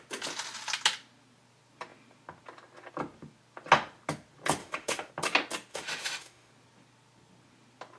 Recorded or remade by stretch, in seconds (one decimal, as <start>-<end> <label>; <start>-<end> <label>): 0.0-4.6 recorded; 4.6-5.1 remade; 5.1-5.7 recorded; 5.7-6.5 remade; 6.5-8.0 recorded